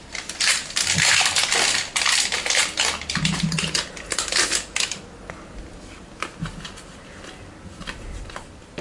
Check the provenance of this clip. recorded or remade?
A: recorded